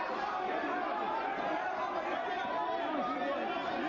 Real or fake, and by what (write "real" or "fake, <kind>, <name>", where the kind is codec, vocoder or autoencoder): real